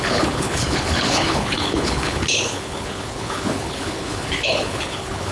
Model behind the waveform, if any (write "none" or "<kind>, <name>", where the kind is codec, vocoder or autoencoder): codec, HILCodec